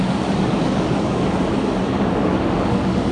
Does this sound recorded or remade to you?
remade